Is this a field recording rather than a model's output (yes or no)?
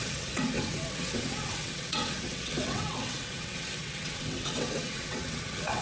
no